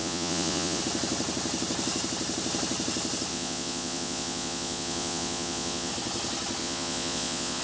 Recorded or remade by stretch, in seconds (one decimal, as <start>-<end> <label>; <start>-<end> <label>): 0.0-0.8 remade; 0.8-3.3 recorded; 3.3-5.9 remade; 5.9-6.6 recorded; 6.6-7.6 remade